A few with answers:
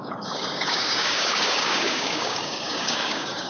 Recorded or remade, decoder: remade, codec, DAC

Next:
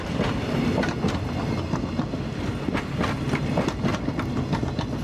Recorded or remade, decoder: recorded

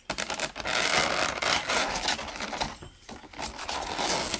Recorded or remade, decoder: recorded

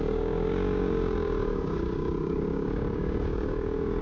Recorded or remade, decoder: remade, codec, DAC